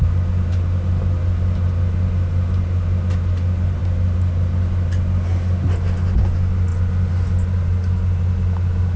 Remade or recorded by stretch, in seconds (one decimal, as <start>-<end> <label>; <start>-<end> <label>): 0.0-9.0 recorded